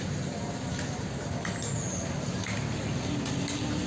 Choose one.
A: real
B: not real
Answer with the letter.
A